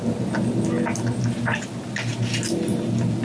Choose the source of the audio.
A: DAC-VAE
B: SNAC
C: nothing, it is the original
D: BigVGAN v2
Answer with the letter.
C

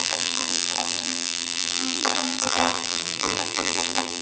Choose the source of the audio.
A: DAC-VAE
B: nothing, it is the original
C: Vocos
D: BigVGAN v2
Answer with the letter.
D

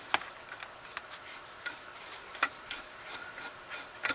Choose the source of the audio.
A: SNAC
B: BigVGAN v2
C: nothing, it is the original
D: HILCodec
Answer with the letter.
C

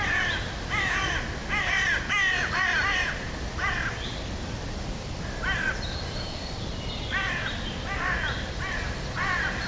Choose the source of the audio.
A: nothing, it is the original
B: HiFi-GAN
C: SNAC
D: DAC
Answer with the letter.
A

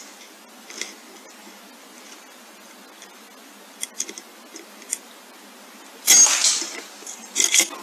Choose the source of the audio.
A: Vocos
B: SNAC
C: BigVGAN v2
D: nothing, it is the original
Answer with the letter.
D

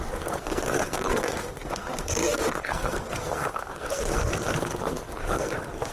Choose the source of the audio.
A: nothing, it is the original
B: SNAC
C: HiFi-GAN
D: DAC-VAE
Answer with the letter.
B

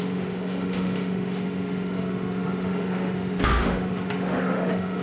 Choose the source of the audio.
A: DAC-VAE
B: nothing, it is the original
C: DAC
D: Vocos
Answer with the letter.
A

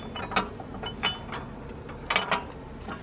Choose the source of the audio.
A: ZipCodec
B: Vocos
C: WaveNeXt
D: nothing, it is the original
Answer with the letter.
D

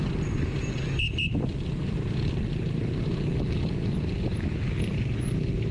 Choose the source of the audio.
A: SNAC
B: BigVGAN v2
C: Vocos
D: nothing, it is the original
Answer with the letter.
D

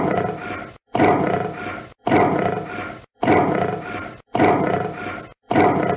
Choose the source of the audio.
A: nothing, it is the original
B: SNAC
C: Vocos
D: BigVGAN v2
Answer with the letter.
A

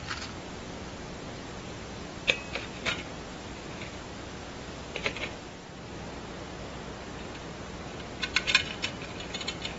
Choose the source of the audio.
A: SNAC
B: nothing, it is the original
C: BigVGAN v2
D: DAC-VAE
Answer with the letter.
B